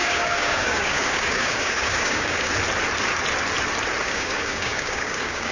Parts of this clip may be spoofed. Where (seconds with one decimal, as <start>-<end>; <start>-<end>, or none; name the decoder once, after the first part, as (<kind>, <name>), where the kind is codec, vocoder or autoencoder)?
0.0-2.5 (codec, DAC); 4.0-5.5